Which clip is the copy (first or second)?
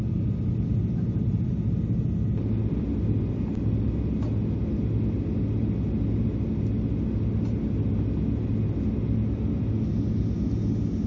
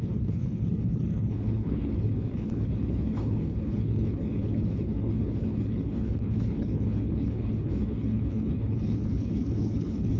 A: second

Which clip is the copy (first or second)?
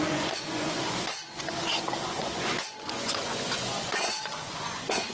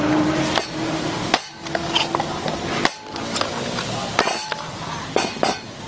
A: first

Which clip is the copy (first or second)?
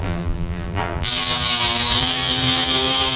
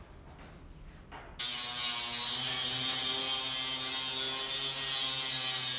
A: first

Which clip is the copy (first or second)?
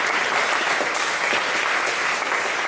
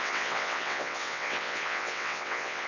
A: second